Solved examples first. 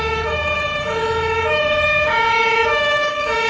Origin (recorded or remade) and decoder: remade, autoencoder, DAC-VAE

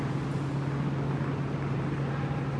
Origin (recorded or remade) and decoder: recorded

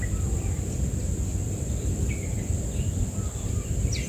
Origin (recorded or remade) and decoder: recorded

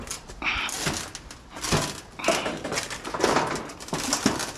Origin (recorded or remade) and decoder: recorded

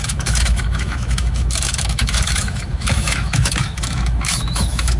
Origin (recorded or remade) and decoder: remade, autoencoder, DAC-VAE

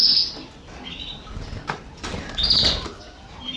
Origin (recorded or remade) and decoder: recorded